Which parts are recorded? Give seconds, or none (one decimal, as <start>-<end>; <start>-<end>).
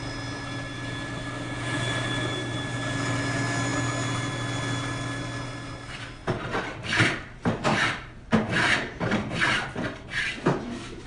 0.0-11.1